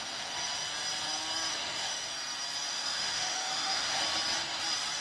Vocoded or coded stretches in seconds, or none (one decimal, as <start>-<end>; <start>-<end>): 1.5-2.1; 2.7-4.0